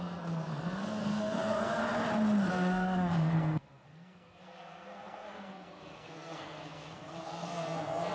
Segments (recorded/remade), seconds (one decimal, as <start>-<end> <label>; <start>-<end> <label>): 0.0-1.8 remade; 1.8-2.5 recorded; 2.5-8.1 remade